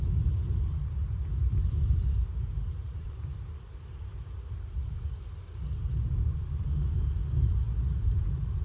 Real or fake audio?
fake